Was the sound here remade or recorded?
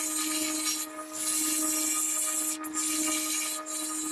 recorded